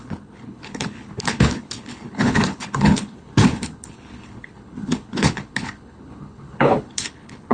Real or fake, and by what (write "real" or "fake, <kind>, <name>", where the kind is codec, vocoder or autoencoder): fake, codec, HILCodec